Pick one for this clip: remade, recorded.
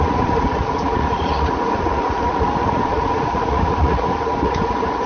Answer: remade